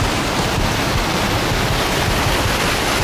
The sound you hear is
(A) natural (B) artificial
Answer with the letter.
A